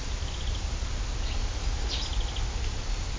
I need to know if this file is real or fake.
real